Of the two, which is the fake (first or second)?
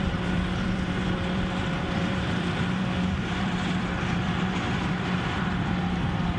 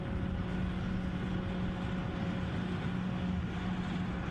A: first